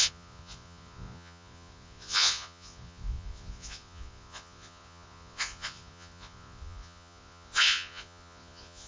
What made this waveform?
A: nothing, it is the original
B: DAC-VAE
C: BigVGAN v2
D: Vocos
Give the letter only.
D